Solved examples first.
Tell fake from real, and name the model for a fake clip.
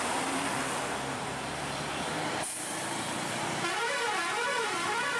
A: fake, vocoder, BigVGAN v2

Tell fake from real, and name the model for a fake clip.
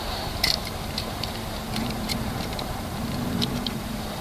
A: fake, vocoder, BigVGAN v2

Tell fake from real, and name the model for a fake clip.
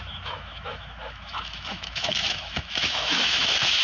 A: fake, autoencoder, DAC-VAE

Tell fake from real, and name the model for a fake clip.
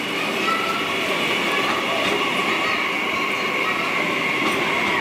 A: real